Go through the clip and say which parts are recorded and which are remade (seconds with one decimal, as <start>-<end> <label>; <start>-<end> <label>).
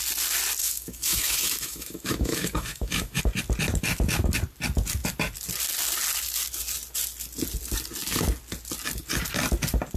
0.0-0.6 recorded; 0.6-3.2 remade; 3.2-10.0 recorded